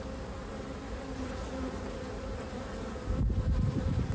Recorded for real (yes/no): yes